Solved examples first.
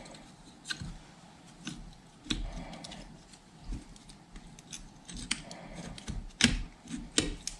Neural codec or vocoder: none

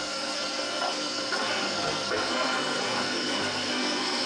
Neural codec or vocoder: codec, SNAC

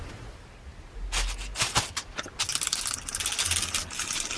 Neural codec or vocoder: none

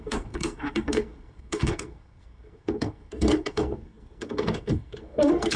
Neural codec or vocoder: codec, SNAC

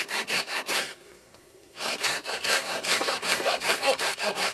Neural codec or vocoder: codec, SNAC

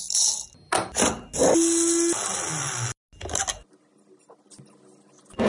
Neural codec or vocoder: none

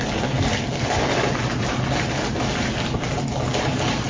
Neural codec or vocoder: none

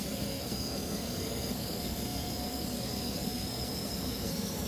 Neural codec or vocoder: codec, SNAC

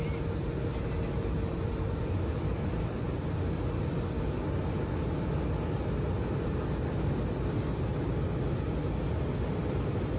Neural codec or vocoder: none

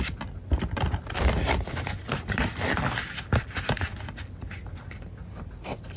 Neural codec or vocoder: none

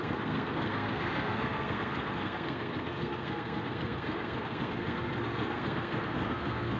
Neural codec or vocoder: codec, SNAC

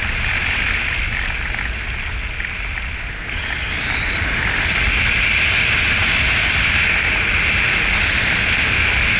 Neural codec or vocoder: none